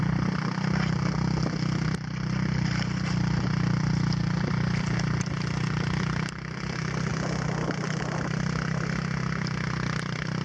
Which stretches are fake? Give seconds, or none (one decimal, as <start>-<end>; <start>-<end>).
none